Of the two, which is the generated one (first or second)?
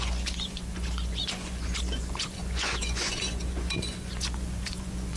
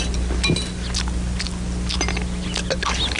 first